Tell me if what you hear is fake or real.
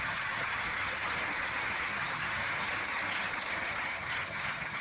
fake